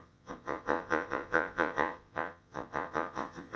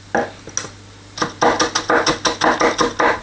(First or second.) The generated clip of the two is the first